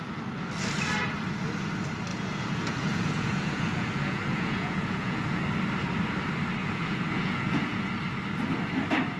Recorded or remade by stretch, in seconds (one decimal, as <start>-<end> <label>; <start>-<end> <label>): 0.0-2.1 recorded; 2.1-5.4 remade; 5.4-6.6 recorded; 6.6-7.9 remade; 7.9-9.2 recorded